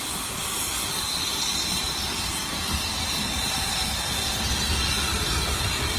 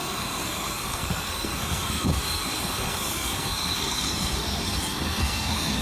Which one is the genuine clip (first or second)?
first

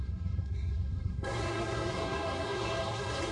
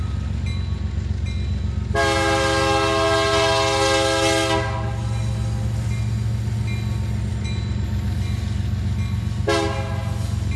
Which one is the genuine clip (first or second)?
second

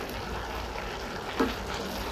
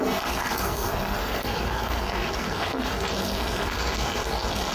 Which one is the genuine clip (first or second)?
first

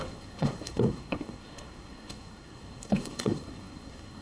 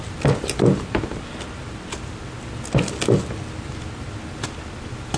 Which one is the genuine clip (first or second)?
second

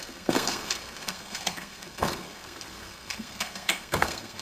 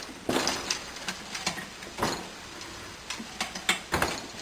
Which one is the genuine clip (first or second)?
second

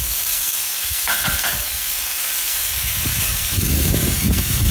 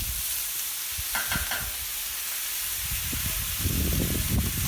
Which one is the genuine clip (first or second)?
second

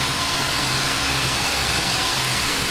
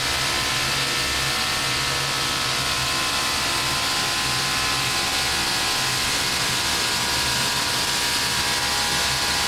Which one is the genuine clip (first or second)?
second